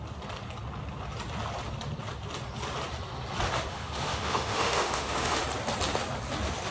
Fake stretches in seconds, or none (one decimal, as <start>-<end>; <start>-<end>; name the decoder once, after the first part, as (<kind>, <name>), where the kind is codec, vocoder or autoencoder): 3.7-5.4 (autoencoder, DAC-VAE)